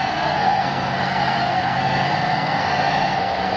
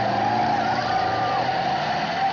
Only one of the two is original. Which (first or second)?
second